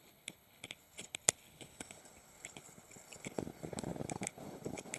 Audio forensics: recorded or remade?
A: remade